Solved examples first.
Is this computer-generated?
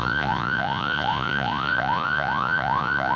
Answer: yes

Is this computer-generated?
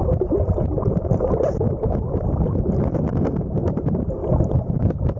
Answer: no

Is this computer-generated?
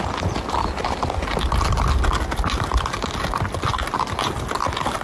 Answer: no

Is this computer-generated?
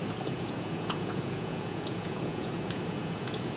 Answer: yes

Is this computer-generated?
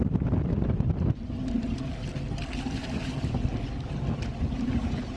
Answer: no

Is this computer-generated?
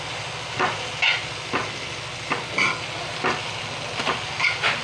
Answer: no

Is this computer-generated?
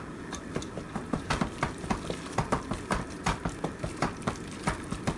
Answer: no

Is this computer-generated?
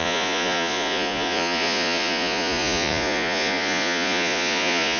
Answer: yes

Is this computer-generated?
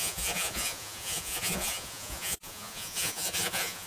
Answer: yes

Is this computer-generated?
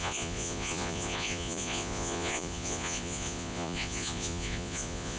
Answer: yes